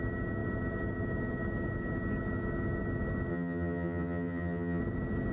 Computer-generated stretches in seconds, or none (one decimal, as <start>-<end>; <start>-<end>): 3.3-4.8